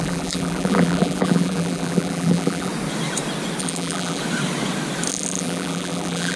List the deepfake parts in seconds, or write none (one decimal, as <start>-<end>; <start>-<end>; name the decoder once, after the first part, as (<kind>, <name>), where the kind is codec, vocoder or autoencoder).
0.0-2.7 (vocoder, BigVGAN v2); 3.6-4.2; 5.1-6.4